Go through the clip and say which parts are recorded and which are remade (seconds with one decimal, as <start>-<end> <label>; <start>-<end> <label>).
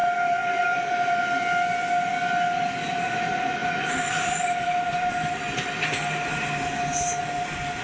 0.0-1.4 remade; 1.4-3.6 recorded; 3.6-5.1 remade; 5.1-7.8 recorded